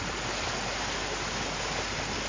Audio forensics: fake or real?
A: real